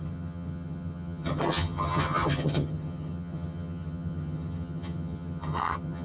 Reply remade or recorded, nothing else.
remade